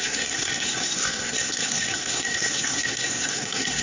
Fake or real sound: fake